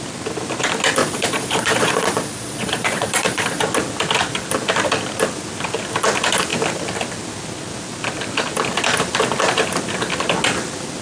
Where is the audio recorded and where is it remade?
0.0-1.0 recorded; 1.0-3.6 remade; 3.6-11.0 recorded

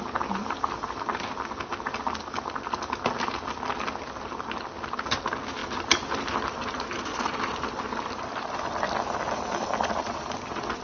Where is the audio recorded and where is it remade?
0.0-10.8 recorded

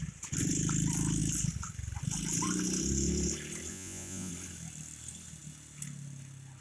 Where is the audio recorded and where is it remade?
0.0-3.7 recorded; 3.7-4.3 remade; 4.3-6.6 recorded

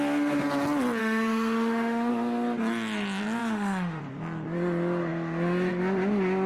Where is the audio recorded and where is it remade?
0.0-1.0 recorded; 1.0-2.1 remade; 2.1-3.4 recorded; 3.4-4.0 remade; 4.0-6.5 recorded

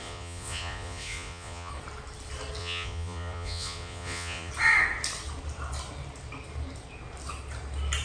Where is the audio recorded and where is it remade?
0.0-1.7 remade; 1.7-2.6 recorded; 2.6-4.5 remade; 4.5-8.0 recorded

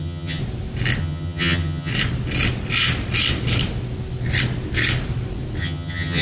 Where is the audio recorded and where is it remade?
0.0-0.4 remade; 0.4-1.0 recorded; 1.0-1.9 remade; 1.9-5.6 recorded; 5.6-6.2 remade

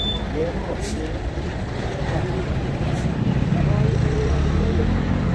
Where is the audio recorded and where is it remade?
0.0-0.4 recorded; 0.4-3.6 remade; 3.6-5.3 recorded